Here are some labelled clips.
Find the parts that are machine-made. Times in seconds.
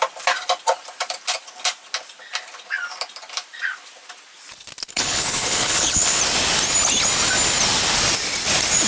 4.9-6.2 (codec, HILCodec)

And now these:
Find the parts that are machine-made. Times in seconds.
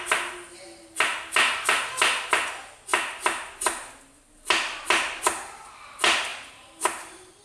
none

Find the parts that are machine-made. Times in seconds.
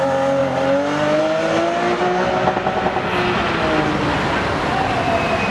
none